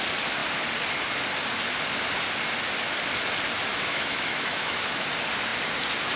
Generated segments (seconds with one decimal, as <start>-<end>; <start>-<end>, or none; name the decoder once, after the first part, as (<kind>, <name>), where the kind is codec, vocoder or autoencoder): 3.7-5.1 (autoencoder, DAC-VAE)